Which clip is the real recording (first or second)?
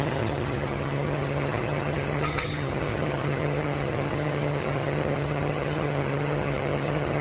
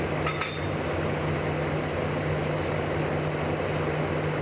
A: second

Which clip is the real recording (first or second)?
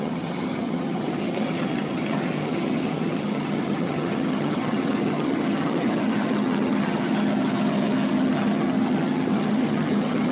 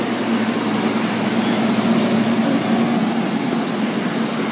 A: second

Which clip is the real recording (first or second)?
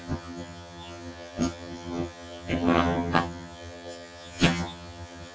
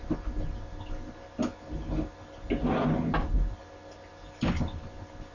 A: second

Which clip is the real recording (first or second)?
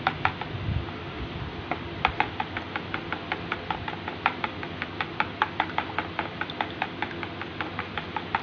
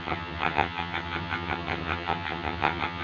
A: first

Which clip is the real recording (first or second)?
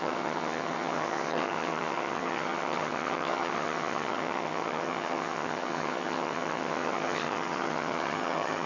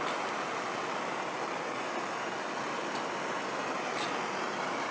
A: second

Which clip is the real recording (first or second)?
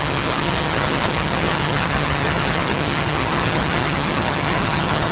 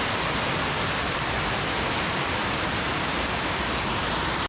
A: second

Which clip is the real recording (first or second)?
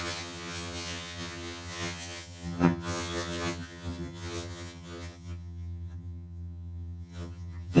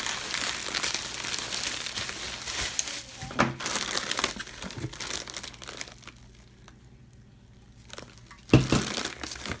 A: second